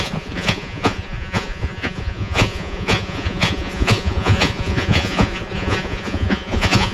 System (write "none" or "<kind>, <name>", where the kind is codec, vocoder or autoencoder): vocoder, Vocos